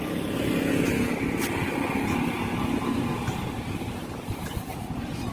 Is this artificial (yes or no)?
no